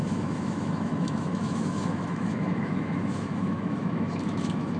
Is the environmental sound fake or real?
fake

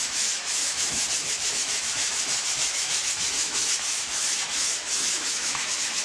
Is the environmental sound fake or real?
fake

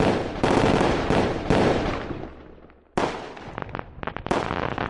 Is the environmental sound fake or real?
real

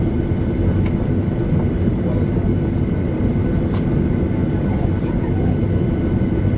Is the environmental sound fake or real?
real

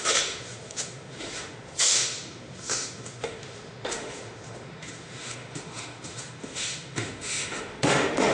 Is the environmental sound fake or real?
fake